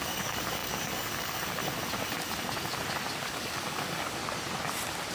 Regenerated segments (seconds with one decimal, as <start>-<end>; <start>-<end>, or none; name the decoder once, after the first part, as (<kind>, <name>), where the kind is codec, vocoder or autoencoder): 0.0-1.6 (codec, DAC); 3.2-4.2